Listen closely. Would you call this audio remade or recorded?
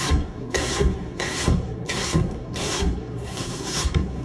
remade